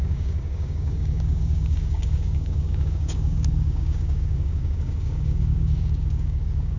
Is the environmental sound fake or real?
fake